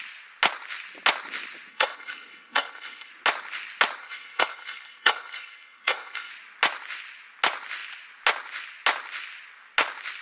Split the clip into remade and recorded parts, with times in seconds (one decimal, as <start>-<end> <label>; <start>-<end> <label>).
0.0-1.7 recorded; 1.7-3.1 remade; 3.1-4.0 recorded; 4.0-6.3 remade; 6.3-10.2 recorded